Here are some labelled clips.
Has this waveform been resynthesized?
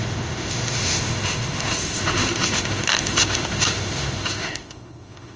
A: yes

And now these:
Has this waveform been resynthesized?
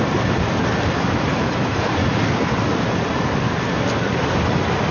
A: no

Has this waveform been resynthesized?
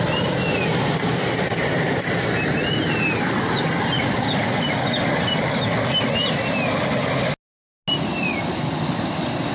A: no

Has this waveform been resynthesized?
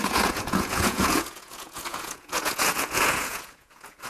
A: yes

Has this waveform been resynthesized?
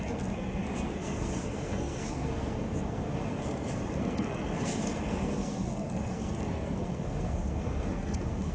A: yes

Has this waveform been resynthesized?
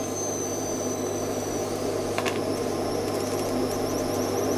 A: no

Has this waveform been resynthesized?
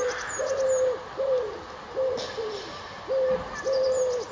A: no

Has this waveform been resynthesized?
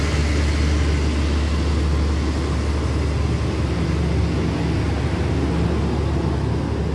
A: no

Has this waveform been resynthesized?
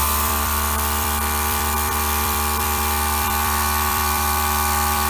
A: yes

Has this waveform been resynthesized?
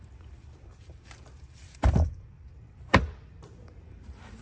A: yes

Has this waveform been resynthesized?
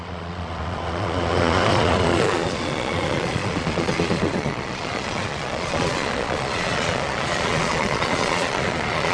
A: yes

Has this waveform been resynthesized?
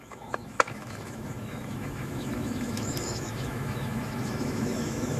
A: yes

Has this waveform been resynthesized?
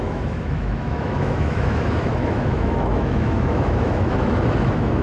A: yes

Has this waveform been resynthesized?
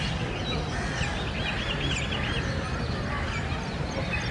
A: no